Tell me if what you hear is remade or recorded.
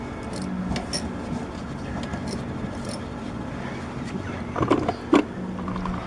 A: recorded